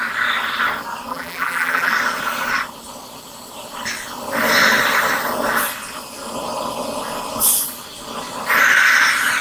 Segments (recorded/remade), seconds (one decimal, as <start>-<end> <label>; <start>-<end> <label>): 0.0-1.1 recorded; 1.1-1.9 remade; 1.9-9.4 recorded